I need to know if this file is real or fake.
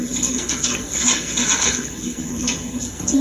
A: fake